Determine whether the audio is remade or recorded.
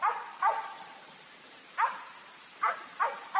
recorded